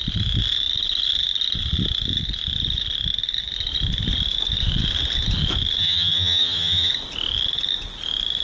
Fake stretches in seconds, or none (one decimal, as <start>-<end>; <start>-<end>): 5.8-6.9